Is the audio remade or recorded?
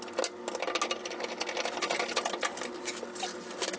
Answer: recorded